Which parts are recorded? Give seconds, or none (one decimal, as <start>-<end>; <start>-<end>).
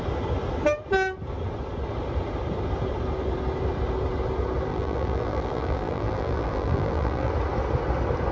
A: 0.0-4.7; 7.3-8.3